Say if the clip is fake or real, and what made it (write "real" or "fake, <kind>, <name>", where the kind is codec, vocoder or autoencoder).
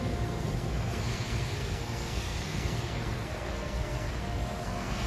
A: fake, codec, SNAC